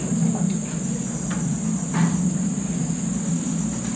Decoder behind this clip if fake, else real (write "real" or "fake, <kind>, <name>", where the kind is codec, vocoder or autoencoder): real